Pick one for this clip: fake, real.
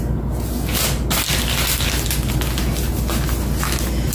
real